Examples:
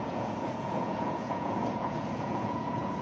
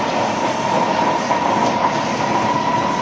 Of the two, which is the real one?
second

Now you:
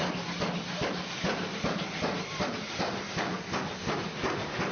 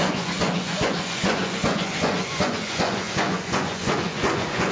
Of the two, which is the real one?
first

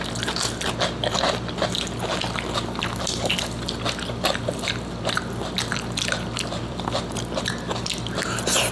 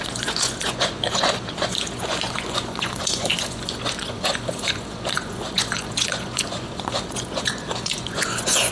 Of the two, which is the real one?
first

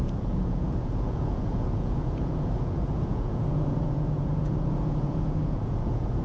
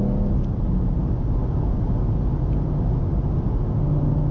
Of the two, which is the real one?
second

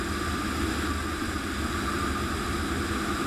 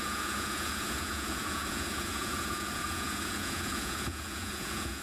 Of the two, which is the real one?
first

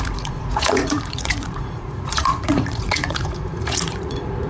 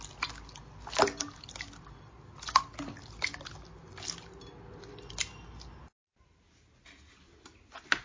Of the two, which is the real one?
second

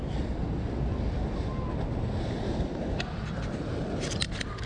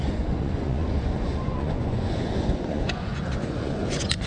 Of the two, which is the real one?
first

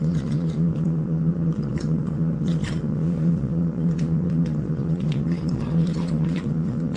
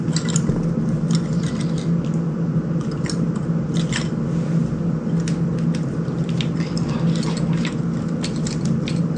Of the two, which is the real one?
second